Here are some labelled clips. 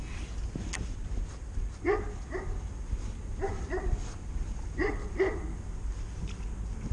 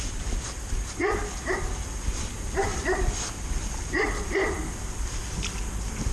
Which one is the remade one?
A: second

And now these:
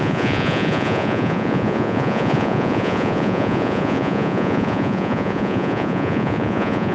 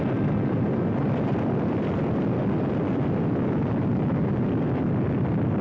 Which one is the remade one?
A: first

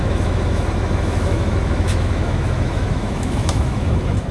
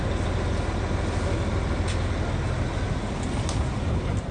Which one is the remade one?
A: first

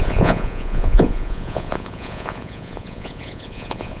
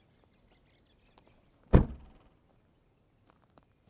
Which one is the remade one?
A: first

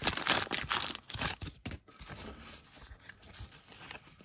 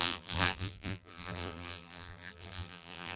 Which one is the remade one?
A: second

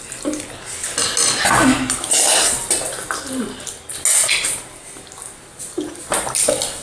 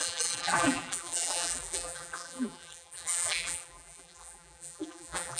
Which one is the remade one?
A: second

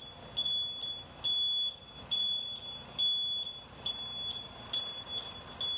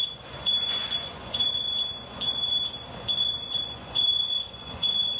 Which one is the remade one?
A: second